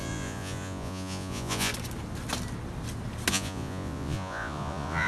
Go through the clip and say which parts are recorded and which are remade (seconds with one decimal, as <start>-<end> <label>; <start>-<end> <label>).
0.0-1.7 remade; 1.7-3.3 recorded; 3.3-5.1 remade